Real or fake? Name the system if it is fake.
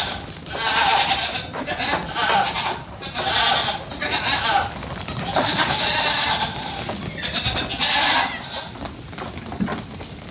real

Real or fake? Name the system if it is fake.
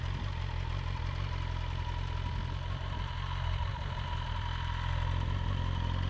real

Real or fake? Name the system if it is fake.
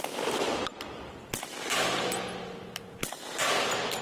real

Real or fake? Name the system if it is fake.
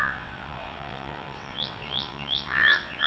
fake, vocoder, WaveNeXt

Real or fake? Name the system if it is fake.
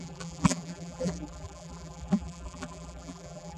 fake, vocoder, BigVGAN v2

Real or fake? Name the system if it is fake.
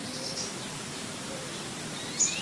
real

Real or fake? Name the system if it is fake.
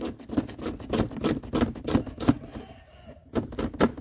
real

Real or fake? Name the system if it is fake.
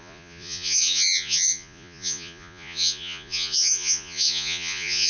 fake, vocoder, Vocos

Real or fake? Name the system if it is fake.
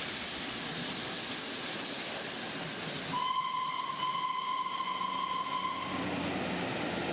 real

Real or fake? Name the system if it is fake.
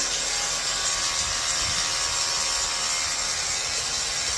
real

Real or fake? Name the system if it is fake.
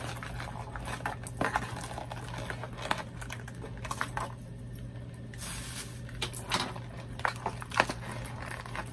real